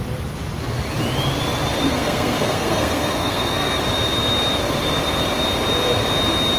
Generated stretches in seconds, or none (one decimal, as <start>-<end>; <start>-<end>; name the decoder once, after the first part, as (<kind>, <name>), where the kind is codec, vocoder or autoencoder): 1.9-3.8 (codec, SNAC)